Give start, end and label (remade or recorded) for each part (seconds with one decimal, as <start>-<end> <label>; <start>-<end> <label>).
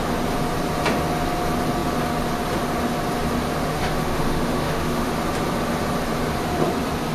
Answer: 0.0-3.6 recorded; 3.6-5.1 remade; 5.1-7.1 recorded